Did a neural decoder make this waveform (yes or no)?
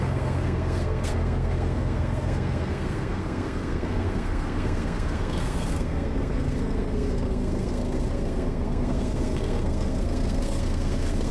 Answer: yes